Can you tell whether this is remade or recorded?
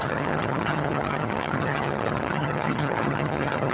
remade